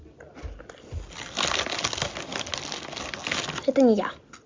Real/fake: real